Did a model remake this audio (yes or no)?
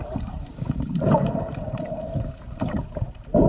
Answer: no